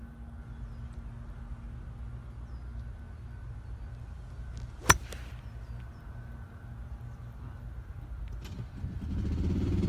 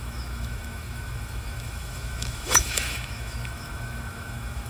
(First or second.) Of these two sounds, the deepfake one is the second